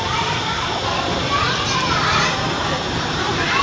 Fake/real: fake